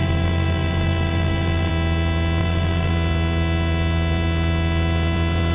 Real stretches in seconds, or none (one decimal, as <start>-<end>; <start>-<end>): 1.7-2.4; 2.9-5.5